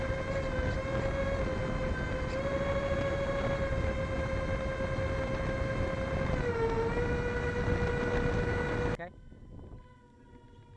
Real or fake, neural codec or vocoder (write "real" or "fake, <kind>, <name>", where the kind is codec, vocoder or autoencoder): real